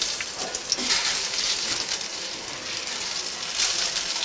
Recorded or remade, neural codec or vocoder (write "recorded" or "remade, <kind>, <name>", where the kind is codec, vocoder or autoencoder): recorded